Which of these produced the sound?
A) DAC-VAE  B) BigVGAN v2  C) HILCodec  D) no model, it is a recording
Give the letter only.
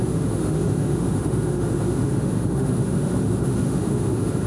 A